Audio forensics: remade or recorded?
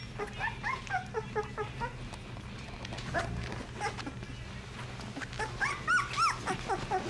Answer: recorded